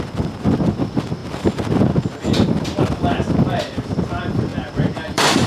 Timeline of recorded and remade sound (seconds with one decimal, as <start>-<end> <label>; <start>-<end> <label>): 0.0-5.5 remade